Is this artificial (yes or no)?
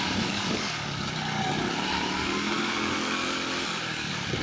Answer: yes